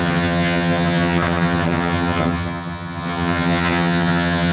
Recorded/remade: remade